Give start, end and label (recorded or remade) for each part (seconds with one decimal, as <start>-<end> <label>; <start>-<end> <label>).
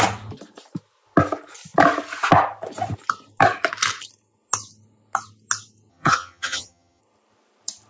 0.0-5.9 recorded; 5.9-7.0 remade; 7.0-7.9 recorded